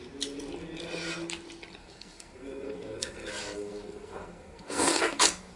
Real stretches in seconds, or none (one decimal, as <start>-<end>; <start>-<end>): 0.0-1.8